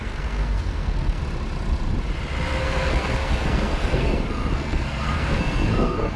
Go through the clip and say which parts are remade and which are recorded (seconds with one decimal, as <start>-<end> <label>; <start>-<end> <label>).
0.0-1.2 remade; 1.2-2.6 recorded; 2.6-6.2 remade